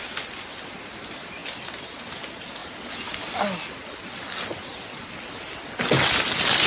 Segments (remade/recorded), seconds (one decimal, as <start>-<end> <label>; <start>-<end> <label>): 0.0-6.7 recorded